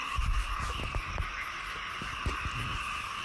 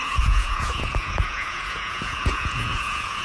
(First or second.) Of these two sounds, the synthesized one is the second